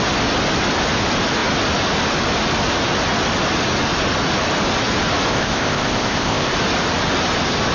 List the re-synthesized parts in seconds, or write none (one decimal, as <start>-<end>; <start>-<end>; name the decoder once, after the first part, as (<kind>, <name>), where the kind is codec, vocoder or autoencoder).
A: 5.3-6.5 (codec, ZipCodec)